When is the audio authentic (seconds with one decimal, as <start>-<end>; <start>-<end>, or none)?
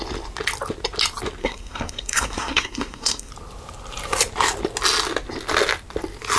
0.0-1.4; 3.3-6.4